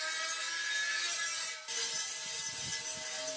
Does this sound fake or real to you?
real